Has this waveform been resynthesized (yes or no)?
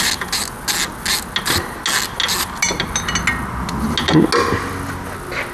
no